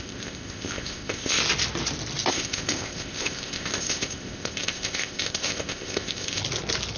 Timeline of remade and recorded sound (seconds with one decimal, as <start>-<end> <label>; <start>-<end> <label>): 0.0-1.4 remade; 1.4-2.3 recorded; 2.3-6.4 remade; 6.4-7.0 recorded